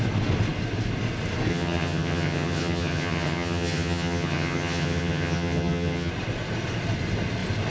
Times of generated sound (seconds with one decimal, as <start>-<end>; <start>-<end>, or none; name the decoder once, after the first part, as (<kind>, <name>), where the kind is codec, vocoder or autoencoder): 1.5-6.1 (vocoder, HiFi-GAN)